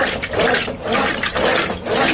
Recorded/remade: recorded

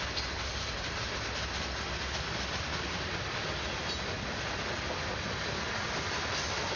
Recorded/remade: recorded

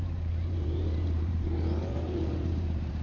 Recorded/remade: remade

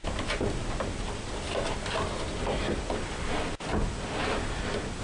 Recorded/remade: recorded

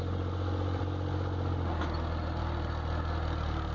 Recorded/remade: recorded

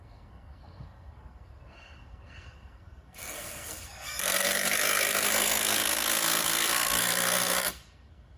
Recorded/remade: remade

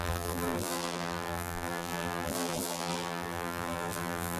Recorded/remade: remade